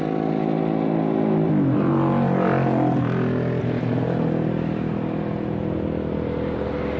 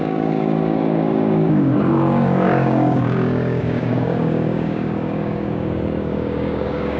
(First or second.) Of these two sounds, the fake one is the second